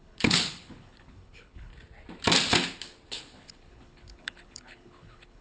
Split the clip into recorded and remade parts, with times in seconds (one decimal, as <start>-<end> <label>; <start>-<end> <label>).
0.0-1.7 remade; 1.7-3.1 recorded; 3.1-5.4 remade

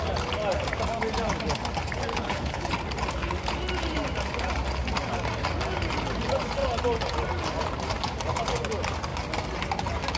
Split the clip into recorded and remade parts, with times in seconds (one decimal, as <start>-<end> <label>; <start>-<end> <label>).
0.0-2.1 recorded; 2.1-2.7 remade; 2.7-10.2 recorded

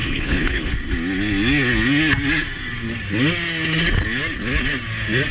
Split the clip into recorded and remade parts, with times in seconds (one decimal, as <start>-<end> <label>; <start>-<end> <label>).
0.0-0.7 remade; 0.7-5.3 recorded